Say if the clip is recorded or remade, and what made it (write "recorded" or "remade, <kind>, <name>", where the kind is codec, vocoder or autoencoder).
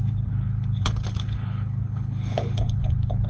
remade, codec, HILCodec